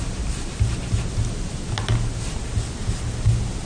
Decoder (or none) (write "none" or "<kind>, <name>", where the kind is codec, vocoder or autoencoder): none